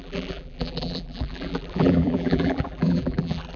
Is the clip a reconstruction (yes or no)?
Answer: yes